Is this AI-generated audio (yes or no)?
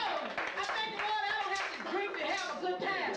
no